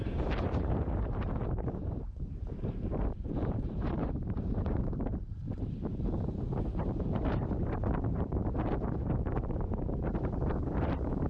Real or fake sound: fake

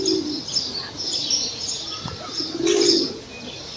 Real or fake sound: real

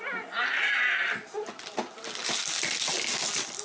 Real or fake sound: real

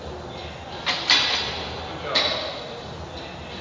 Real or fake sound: real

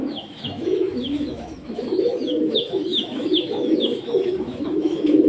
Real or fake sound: fake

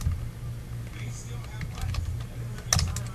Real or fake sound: real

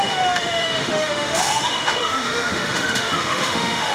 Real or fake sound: fake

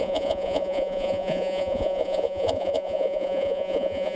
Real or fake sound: fake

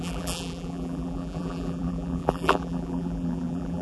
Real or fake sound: fake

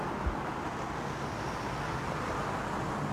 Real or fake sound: real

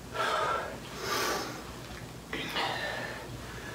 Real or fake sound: real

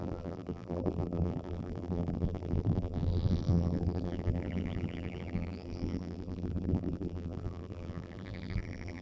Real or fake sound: fake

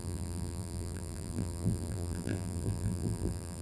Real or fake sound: fake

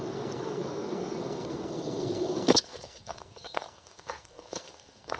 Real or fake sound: fake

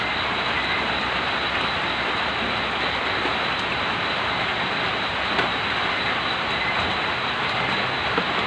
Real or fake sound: real